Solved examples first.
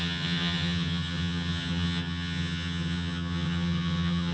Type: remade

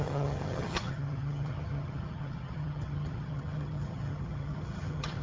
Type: remade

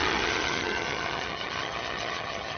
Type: remade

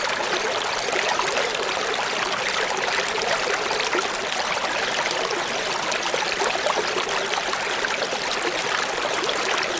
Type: recorded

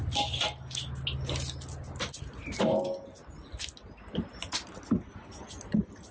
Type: recorded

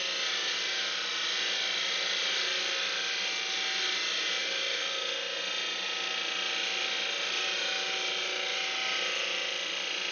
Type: recorded